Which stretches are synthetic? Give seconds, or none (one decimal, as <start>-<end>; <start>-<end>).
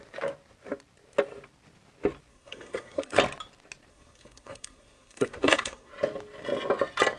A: 2.3-3.2; 3.9-5.9